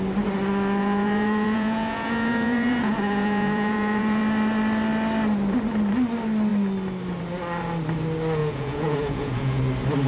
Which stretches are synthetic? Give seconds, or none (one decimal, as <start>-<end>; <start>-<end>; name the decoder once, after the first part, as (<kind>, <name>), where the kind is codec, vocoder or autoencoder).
0.8-4.2 (vocoder, Vocos); 8.4-9.6